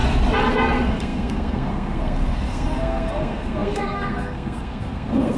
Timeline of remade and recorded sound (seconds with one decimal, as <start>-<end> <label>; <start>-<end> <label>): 0.0-0.5 recorded; 0.5-5.4 remade